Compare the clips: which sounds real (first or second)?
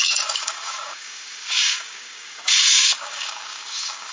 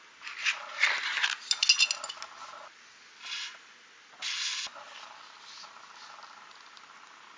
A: second